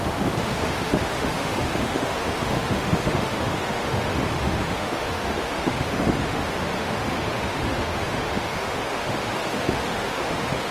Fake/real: fake